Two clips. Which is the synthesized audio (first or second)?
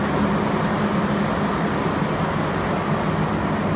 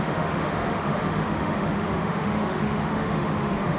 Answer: second